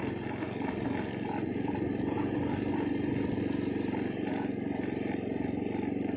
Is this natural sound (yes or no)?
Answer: yes